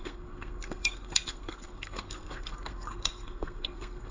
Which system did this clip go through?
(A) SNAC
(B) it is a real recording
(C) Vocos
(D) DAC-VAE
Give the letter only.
A